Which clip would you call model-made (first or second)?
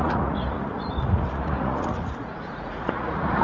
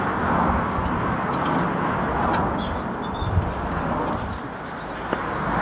first